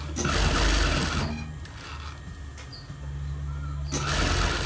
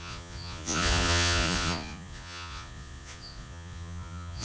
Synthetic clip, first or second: second